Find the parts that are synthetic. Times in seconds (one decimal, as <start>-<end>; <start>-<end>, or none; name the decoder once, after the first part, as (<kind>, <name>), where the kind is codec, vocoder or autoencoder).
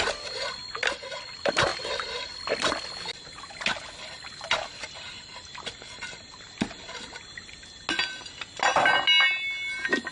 none